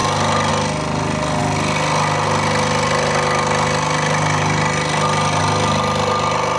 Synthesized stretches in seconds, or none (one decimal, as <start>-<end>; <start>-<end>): none